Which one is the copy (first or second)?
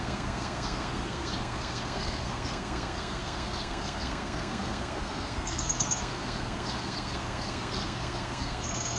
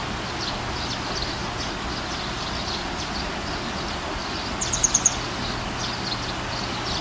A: first